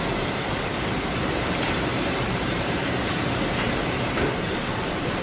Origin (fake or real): fake